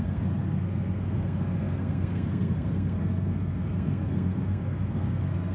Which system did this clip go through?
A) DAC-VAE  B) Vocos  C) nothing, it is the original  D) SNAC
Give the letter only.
D